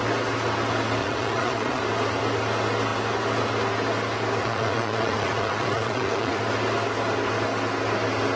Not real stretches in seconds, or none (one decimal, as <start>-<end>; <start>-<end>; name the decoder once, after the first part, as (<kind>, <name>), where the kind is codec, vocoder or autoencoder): 1.0-1.8 (vocoder, Vocos); 4.4-6.4